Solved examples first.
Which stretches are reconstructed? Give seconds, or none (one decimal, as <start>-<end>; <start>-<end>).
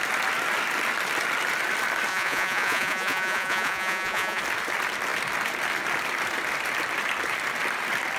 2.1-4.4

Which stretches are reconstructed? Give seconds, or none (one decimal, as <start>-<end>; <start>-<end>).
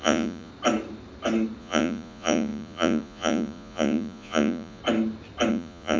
0.0-0.5; 1.6-4.8; 5.5-6.0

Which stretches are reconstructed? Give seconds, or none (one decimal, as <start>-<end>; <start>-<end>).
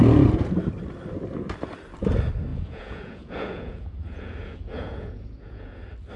2.5-5.8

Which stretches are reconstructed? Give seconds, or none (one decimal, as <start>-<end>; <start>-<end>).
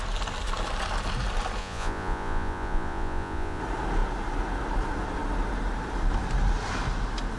1.6-3.6